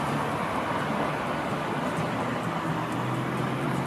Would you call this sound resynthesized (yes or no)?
no